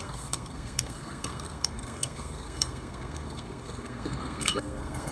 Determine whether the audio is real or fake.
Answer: fake